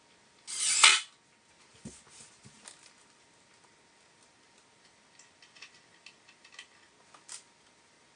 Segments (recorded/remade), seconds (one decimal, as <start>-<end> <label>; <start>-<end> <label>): 0.0-8.2 recorded